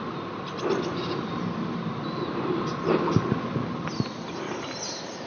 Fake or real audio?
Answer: real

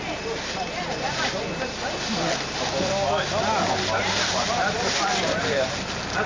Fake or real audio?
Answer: real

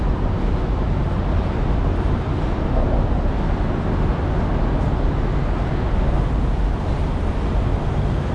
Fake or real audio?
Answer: real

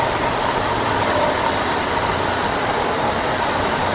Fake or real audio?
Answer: real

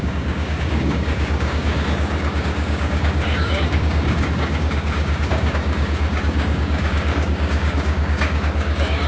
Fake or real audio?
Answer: fake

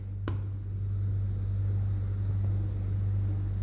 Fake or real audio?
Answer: real